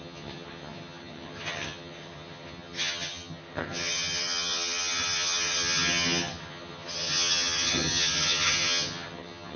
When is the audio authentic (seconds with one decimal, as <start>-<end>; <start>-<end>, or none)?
none